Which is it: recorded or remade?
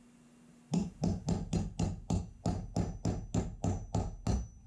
recorded